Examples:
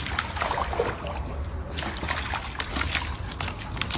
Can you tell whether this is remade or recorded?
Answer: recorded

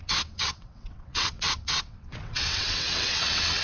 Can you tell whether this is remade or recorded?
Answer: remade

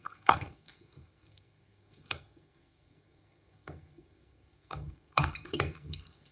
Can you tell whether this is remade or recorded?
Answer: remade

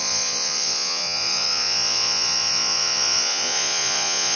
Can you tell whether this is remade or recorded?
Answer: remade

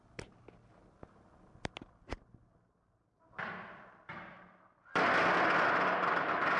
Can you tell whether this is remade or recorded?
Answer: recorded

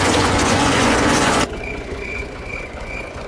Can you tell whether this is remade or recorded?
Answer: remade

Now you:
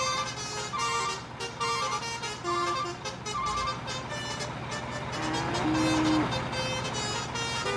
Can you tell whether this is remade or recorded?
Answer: recorded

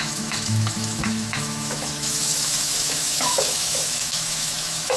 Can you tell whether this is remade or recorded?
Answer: remade